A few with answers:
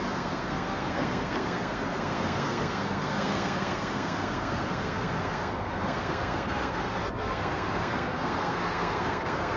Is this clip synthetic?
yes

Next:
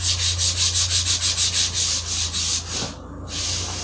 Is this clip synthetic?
no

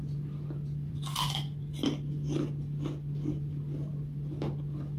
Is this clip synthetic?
no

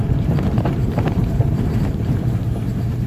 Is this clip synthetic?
yes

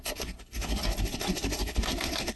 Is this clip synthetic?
yes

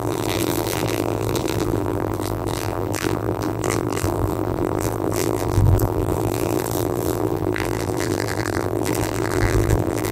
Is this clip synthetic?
yes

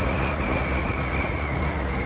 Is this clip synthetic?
yes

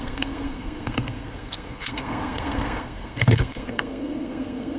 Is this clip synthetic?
yes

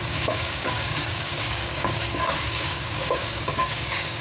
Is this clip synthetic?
yes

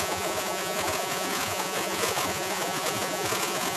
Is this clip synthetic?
yes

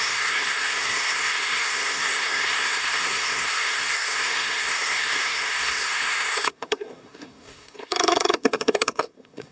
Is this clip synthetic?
yes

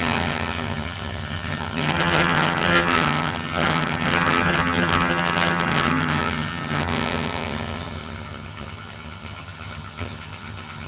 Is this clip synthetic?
yes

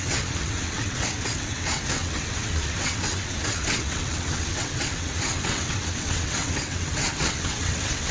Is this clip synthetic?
yes